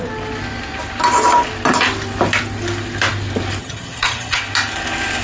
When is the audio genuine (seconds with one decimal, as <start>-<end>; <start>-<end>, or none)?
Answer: 0.0-3.6; 4.4-5.2